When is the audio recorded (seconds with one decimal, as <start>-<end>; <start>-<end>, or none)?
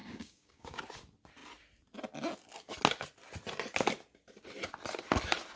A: 0.8-5.6